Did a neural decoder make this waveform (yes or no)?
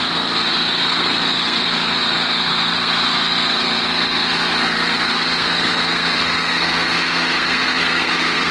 yes